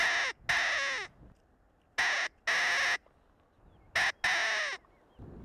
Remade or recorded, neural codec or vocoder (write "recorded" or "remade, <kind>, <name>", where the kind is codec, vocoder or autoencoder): recorded